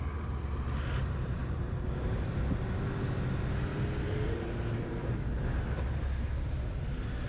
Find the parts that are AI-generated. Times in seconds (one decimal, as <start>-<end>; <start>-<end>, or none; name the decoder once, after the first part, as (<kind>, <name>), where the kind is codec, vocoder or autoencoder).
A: 1.4-2.6 (vocoder, BigVGAN v2); 3.7-6.0